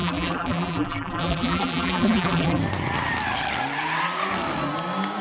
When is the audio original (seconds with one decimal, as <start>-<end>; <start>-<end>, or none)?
2.6-5.2